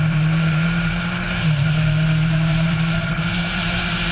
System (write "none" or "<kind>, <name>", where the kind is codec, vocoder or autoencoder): vocoder, BigVGAN v2